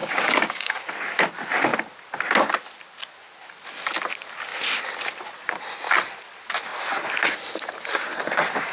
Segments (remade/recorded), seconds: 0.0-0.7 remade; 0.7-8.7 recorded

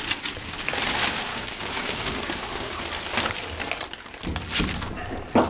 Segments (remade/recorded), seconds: 0.0-1.3 recorded; 1.3-2.8 remade; 2.8-5.5 recorded

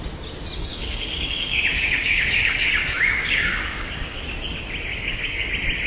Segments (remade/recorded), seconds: 0.0-0.7 recorded; 0.7-4.2 remade; 4.2-4.9 recorded; 4.9-5.5 remade; 5.5-5.9 recorded

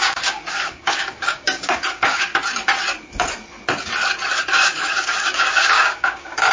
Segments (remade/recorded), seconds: 0.0-2.3 remade; 2.3-4.4 recorded; 4.4-6.5 remade

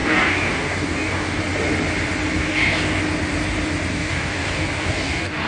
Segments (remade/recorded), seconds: 0.0-1.4 remade; 1.4-2.4 recorded; 2.4-3.0 remade; 3.0-3.9 recorded; 3.9-5.5 remade

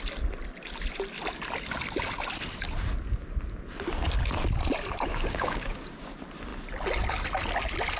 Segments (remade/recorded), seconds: 0.0-5.1 recorded; 5.1-6.1 remade; 6.1-8.0 recorded

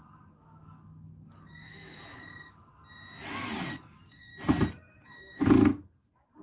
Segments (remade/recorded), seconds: 0.0-2.7 remade; 2.7-3.6 recorded; 3.6-4.3 remade; 4.3-4.9 recorded; 4.9-5.7 remade; 5.7-6.4 recorded

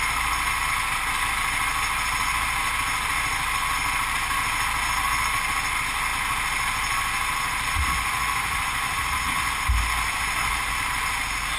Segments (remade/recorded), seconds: 0.0-11.6 recorded